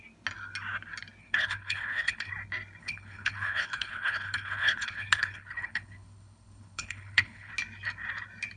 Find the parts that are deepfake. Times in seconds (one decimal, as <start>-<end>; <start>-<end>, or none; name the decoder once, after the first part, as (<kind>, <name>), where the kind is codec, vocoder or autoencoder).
1.2-2.3 (codec, HILCodec); 2.8-7.5